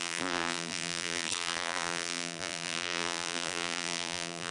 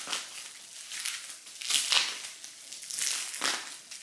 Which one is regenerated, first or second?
first